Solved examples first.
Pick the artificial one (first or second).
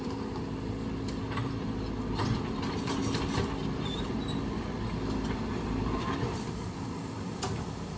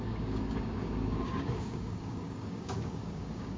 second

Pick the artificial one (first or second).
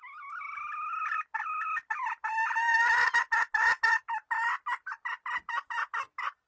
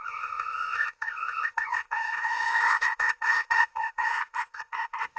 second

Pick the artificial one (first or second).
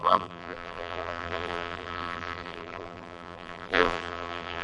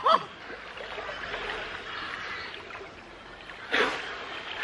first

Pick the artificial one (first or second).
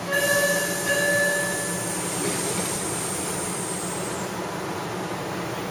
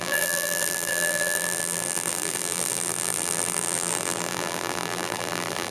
second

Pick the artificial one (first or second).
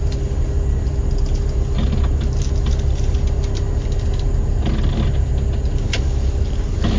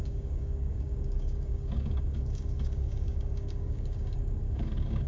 second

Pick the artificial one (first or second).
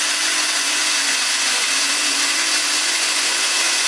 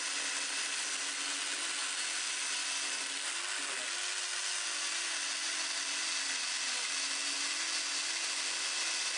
first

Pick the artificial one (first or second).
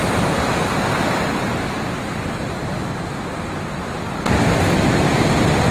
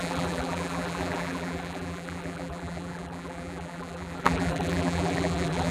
second